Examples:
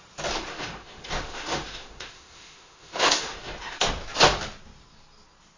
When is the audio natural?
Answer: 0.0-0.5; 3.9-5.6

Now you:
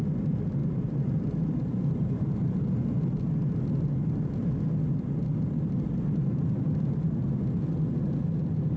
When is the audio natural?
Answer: 0.0-0.6; 2.5-8.8